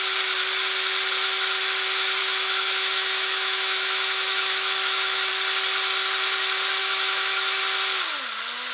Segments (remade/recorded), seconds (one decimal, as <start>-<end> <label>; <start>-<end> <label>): 0.0-2.2 recorded; 2.2-5.3 remade; 5.3-6.8 recorded; 6.8-7.6 remade; 7.6-8.7 recorded